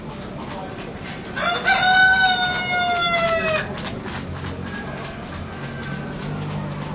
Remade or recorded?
recorded